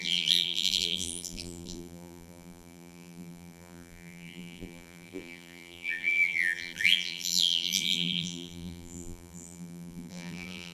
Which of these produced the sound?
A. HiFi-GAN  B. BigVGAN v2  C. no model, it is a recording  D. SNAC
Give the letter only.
B